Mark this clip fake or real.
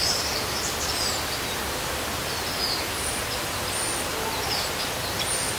real